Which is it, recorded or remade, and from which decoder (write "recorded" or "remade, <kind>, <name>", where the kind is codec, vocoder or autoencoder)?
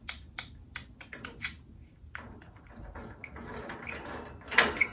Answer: recorded